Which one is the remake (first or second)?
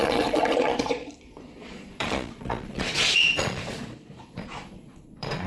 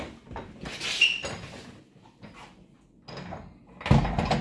first